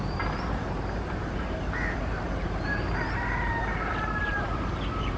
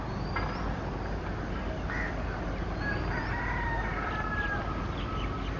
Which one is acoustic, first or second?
second